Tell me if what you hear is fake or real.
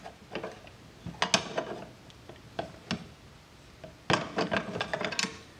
real